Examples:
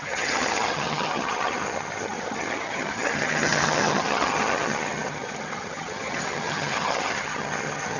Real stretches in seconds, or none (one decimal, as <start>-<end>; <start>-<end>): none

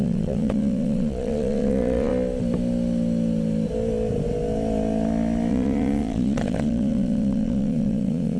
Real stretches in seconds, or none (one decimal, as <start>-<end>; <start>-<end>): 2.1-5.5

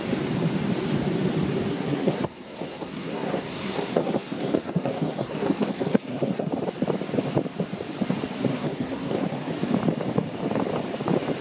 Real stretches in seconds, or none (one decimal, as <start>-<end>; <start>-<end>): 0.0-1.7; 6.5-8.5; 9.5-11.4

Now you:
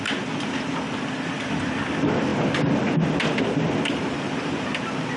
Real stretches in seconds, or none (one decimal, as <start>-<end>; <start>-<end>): 0.0-5.2

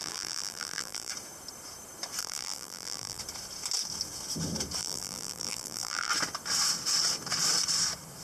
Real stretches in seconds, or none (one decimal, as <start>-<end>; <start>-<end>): 1.1-2.2; 3.2-4.8; 6.1-8.2